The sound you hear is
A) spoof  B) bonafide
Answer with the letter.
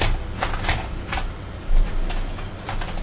B